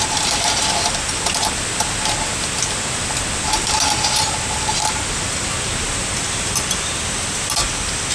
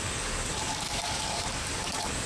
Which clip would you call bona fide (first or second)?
first